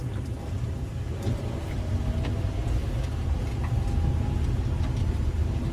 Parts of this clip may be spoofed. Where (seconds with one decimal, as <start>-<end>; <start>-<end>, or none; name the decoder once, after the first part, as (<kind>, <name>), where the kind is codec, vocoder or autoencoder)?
none